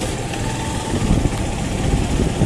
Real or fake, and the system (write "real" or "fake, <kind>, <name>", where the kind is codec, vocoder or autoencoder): real